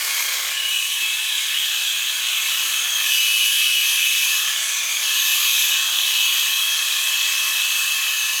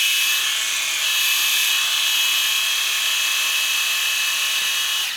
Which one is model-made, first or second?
first